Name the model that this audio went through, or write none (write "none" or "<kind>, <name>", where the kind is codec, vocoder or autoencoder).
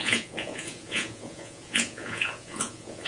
vocoder, Vocos